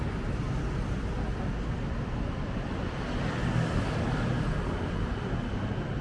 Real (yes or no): yes